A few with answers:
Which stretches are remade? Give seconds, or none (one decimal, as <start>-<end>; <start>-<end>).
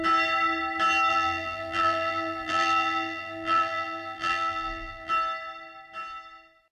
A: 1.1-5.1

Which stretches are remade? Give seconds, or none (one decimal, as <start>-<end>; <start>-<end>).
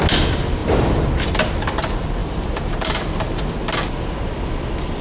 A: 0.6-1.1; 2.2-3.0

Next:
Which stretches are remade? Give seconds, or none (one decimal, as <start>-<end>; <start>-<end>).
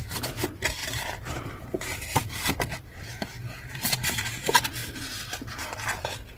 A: 0.8-2.5